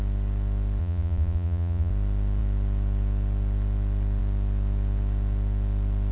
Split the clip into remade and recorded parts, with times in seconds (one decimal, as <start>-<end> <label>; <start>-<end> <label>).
0.0-0.8 recorded; 0.8-1.9 remade; 1.9-6.1 recorded

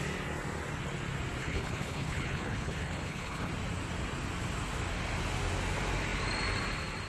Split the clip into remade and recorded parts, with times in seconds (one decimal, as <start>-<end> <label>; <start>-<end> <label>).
0.0-1.4 recorded; 1.4-3.5 remade; 3.5-7.1 recorded

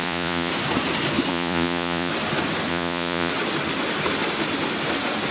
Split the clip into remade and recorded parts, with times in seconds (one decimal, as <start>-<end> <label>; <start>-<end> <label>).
0.0-0.5 remade; 0.5-1.3 recorded; 1.3-2.1 remade; 2.1-2.7 recorded; 2.7-3.3 remade; 3.3-5.3 recorded

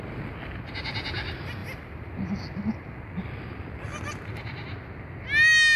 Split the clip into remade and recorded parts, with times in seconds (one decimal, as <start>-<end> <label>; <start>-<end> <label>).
0.0-1.6 recorded; 1.6-3.3 remade; 3.3-5.8 recorded

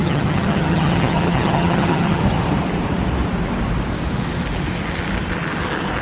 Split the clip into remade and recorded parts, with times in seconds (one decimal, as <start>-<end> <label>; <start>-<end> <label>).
0.0-2.2 remade; 2.2-6.0 recorded

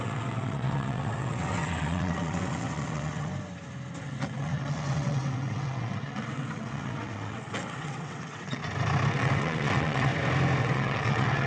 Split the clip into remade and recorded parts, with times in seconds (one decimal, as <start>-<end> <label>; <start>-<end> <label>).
0.0-3.3 remade; 3.3-4.0 recorded; 4.0-8.6 remade; 8.6-9.1 recorded; 9.1-10.1 remade; 10.1-10.6 recorded; 10.6-11.5 remade

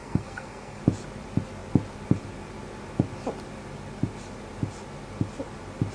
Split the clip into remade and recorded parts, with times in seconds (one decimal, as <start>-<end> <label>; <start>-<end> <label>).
0.0-0.8 remade; 0.8-5.9 recorded

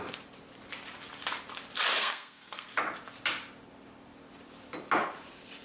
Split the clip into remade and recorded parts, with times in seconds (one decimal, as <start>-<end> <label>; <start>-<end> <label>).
0.0-2.0 recorded; 2.0-2.7 remade; 2.7-5.6 recorded